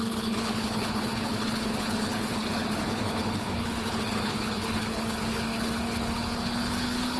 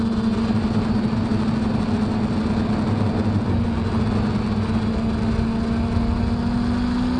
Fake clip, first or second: first